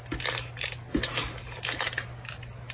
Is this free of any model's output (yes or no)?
yes